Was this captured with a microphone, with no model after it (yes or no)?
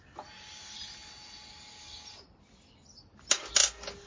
yes